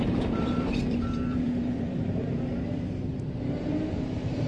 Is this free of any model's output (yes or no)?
no